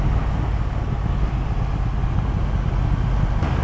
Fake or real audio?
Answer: real